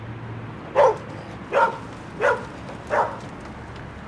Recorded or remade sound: recorded